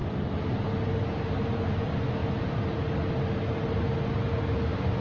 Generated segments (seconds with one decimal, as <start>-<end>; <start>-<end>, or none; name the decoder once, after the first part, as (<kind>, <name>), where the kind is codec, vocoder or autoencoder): none